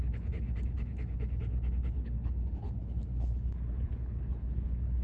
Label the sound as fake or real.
fake